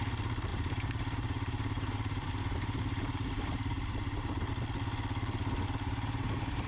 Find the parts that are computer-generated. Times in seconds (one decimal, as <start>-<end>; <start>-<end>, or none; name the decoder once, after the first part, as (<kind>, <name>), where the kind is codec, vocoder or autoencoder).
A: 0.5-4.5 (vocoder, BigVGAN v2); 5.4-6.7